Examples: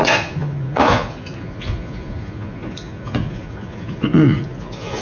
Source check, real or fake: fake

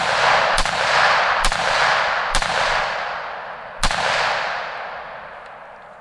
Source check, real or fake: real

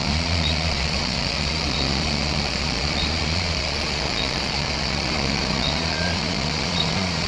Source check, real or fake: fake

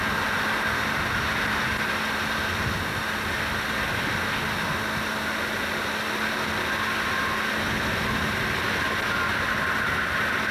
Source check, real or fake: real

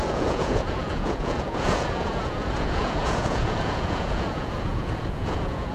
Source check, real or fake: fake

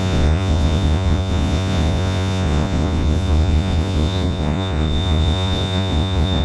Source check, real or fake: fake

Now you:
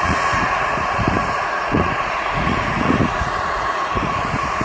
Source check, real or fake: fake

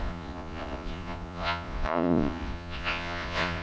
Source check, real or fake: fake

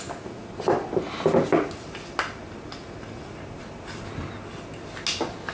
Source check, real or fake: real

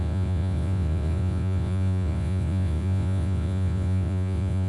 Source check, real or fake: fake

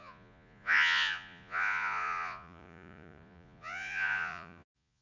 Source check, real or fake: fake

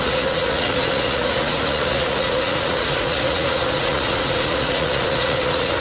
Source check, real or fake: fake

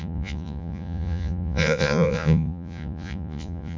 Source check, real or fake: fake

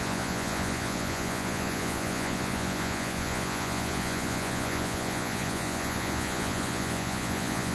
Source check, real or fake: fake